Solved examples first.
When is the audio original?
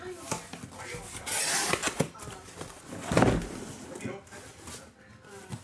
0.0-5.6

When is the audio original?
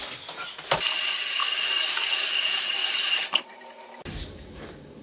0.0-1.4; 2.9-4.2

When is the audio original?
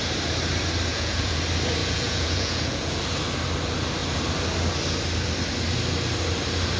0.0-0.9; 1.4-1.8; 3.0-6.8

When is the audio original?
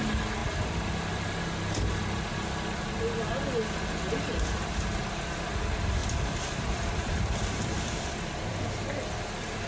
0.0-6.0; 8.6-9.7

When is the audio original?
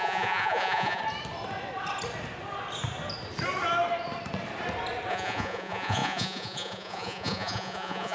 1.0-5.1